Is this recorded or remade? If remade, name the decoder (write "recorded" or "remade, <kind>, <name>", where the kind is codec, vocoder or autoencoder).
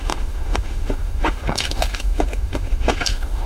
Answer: remade, autoencoder, DAC-VAE